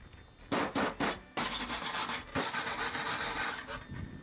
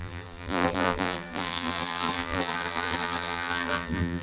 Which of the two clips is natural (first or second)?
first